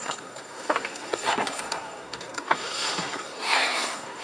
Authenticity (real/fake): fake